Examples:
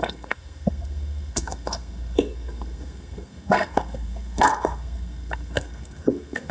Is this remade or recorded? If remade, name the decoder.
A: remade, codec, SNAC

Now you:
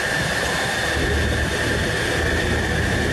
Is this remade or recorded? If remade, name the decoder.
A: recorded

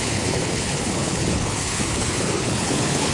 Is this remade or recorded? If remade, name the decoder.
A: remade, codec, HILCodec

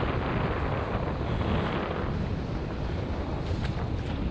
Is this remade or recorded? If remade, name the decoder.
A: recorded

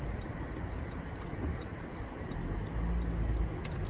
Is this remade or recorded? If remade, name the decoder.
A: recorded